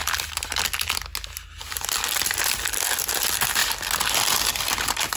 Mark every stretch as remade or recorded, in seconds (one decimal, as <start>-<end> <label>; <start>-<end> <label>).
0.0-5.2 recorded